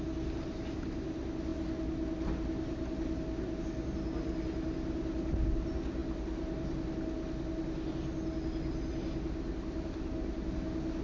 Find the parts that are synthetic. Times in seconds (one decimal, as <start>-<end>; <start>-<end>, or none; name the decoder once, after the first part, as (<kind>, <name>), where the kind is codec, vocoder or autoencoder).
none